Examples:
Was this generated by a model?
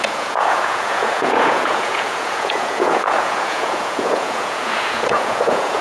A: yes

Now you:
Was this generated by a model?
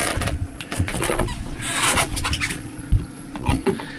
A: yes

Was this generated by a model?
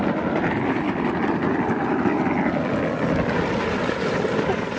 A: no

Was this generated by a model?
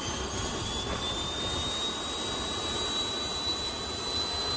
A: no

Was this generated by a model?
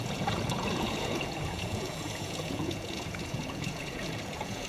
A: yes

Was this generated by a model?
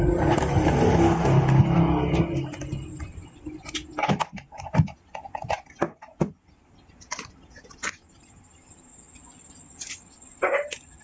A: no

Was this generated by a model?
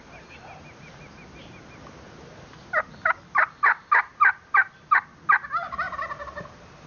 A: no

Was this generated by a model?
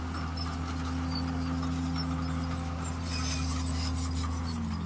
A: no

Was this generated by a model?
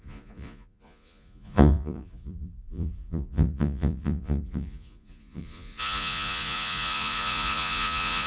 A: yes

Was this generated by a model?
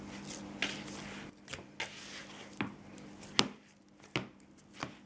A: no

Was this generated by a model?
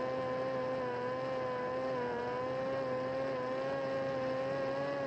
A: no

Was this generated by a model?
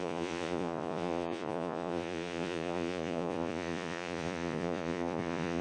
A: yes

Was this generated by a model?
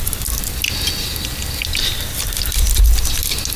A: no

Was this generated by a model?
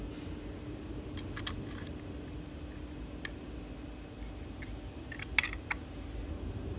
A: no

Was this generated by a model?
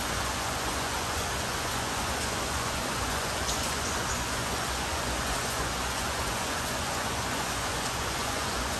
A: yes